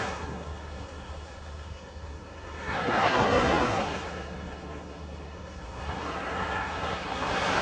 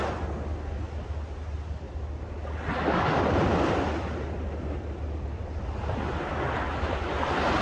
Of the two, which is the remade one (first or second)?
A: first